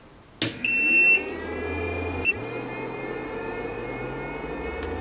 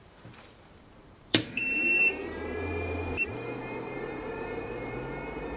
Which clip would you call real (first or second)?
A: first